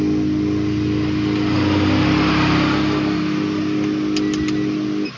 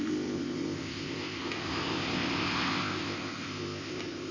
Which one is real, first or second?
first